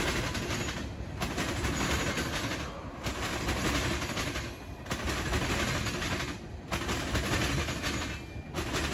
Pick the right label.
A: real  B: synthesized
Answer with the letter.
A